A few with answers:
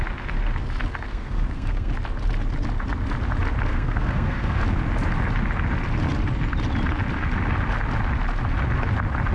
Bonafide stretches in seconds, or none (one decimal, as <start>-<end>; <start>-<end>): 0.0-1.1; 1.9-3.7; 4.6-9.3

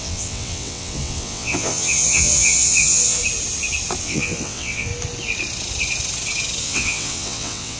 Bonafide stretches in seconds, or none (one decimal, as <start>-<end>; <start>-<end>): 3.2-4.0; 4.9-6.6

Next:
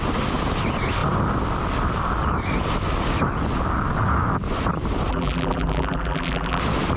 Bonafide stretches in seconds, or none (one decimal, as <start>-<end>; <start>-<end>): 0.0-5.1; 6.6-7.0